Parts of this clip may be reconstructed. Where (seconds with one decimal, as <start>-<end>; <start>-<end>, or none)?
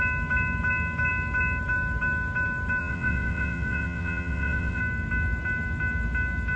2.8-4.8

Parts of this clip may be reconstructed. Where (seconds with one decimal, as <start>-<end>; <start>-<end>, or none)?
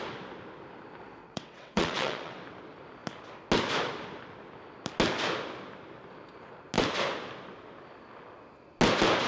1.2-2.4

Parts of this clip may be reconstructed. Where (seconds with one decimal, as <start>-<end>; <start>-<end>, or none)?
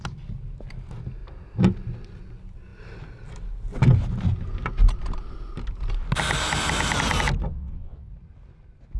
7.5-8.1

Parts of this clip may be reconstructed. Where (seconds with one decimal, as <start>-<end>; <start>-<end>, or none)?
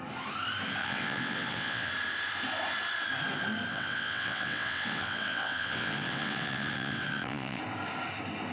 0.8-1.9; 3.7-7.6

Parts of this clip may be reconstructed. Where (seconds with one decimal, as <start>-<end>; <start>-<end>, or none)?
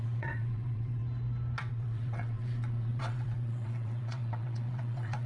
0.0-1.0; 1.6-5.3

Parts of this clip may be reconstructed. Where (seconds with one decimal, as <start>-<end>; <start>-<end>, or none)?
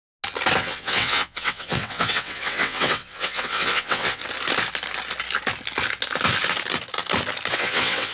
0.6-4.2; 7.5-8.1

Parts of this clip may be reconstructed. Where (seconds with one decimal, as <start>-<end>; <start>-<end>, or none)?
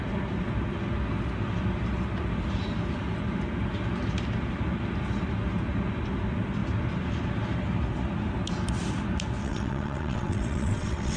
9.4-11.2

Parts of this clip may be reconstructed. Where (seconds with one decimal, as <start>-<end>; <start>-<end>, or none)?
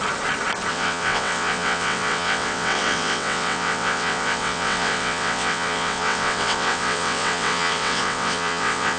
0.7-9.0